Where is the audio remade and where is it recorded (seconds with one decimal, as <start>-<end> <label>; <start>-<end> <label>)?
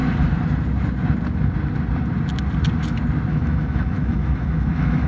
0.0-3.3 recorded; 3.3-5.1 remade